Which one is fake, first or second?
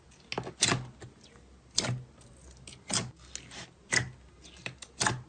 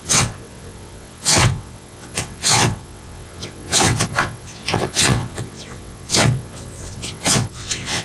second